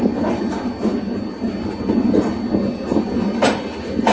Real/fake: real